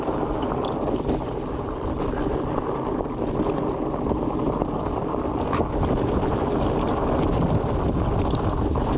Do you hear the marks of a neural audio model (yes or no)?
no